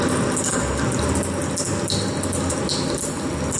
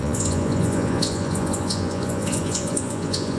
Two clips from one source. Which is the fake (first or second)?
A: second